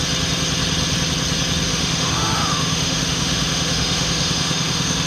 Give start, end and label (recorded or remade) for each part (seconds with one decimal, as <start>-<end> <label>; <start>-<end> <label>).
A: 0.0-1.7 recorded; 1.7-5.1 remade